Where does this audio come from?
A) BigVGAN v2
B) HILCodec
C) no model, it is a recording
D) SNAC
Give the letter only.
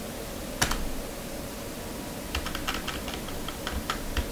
C